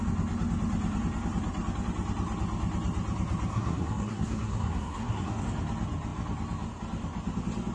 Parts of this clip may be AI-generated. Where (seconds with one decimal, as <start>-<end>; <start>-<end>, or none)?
3.5-5.4